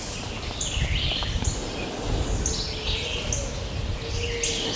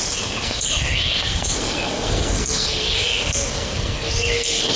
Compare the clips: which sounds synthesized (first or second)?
second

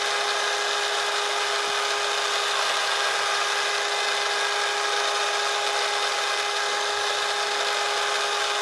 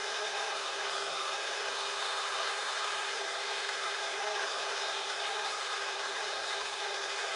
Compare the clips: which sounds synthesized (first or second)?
second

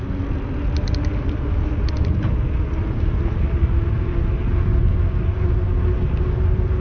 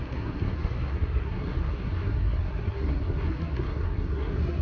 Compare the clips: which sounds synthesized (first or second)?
second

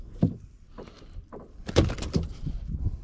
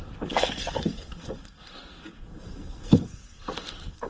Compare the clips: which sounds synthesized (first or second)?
second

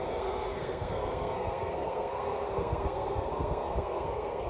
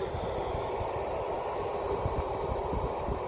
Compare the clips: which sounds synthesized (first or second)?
first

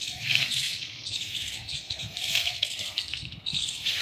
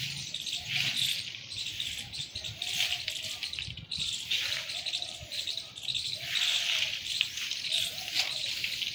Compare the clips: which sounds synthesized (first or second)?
first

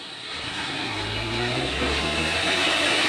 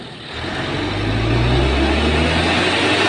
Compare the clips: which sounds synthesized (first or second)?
first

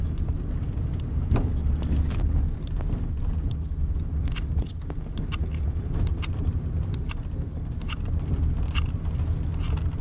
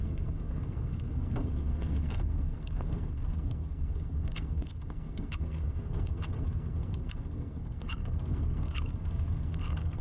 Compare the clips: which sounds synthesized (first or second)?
second